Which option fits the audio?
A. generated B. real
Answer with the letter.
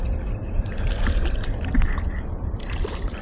B